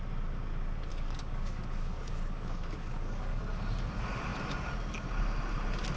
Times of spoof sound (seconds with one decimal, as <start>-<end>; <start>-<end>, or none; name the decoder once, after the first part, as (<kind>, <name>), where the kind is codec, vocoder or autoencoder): 0.9-3.4 (codec, DAC)